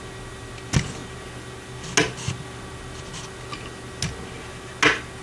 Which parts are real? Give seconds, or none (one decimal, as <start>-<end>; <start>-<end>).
0.0-5.2